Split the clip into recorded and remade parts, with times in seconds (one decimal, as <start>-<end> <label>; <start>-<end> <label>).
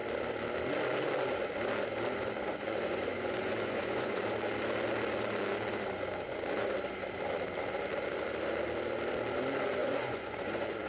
0.0-2.5 recorded; 2.5-4.2 remade; 4.2-9.8 recorded; 9.8-10.9 remade